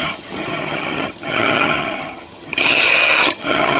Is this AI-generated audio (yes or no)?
yes